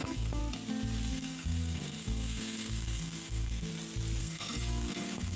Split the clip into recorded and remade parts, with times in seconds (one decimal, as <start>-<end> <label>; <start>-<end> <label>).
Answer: 0.0-0.4 remade; 0.4-1.1 recorded; 1.1-3.7 remade; 3.7-4.2 recorded; 4.2-5.4 remade